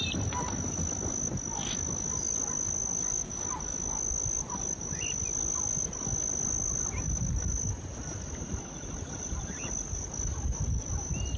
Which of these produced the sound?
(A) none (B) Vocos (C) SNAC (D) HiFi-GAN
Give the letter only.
A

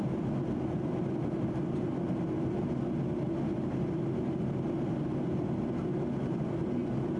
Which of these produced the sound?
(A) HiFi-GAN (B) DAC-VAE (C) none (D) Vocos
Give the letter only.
C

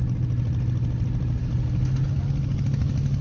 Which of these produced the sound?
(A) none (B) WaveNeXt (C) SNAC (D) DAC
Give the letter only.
A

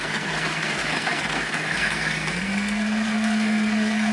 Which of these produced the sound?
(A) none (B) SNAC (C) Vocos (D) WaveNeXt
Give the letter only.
B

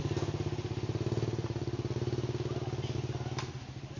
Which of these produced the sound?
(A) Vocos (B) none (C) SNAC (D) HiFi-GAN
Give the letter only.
B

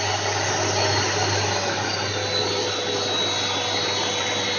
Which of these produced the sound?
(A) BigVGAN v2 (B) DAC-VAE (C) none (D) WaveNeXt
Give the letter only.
C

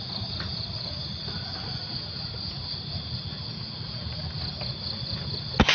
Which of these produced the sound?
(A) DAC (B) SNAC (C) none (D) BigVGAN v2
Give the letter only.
C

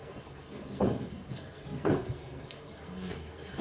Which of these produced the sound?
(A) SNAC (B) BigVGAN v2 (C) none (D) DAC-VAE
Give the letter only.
A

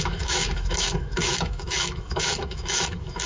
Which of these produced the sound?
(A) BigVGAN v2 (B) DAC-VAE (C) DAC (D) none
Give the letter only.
B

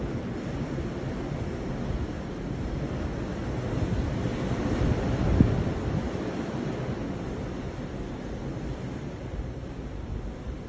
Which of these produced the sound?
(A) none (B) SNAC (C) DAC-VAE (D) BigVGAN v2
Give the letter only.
A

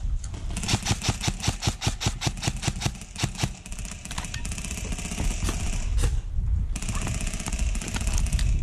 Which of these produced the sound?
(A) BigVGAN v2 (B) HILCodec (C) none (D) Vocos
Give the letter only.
C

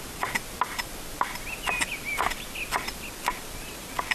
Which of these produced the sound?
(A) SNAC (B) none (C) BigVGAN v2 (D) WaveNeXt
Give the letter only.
B